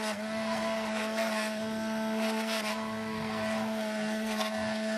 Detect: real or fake fake